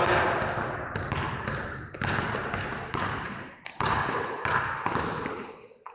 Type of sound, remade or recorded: recorded